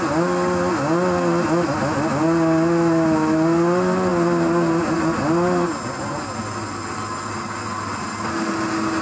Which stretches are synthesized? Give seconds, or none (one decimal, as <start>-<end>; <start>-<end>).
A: none